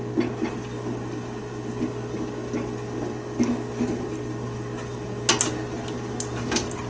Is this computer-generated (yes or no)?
no